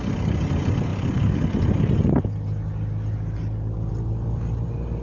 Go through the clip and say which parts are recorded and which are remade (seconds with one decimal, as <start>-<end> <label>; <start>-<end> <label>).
0.0-5.0 recorded